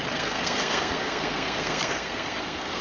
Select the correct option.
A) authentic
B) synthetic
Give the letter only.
B